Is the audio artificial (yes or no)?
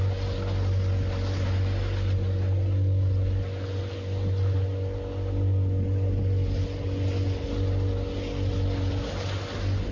no